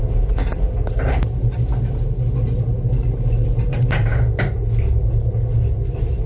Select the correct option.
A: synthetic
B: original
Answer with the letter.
B